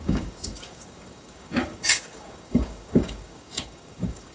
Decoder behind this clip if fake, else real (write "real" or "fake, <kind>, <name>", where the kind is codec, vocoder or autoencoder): fake, codec, DAC